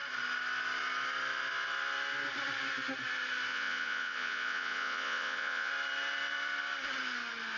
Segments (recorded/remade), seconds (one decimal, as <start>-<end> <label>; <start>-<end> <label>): 0.0-3.5 recorded; 3.5-5.7 remade; 5.7-7.6 recorded